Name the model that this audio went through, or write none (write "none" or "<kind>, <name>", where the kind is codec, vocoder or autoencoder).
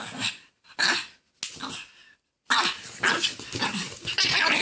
none